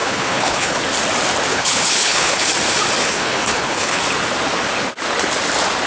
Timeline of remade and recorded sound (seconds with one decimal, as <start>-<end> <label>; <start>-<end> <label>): 0.0-0.8 remade; 0.8-1.5 recorded; 1.5-2.5 remade; 2.5-3.0 recorded; 3.0-4.0 remade; 4.0-5.9 recorded